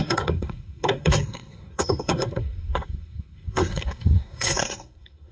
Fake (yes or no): yes